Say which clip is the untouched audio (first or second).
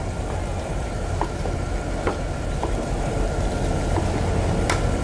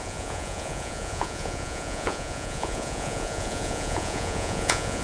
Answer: first